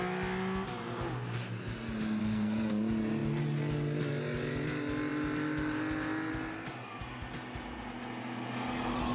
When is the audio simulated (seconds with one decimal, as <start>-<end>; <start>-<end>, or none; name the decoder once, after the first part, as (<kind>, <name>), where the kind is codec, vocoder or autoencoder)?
2.2-2.7 (codec, SNAC)